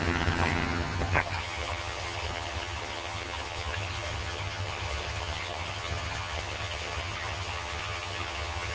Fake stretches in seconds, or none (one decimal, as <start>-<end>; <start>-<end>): 0.0-8.7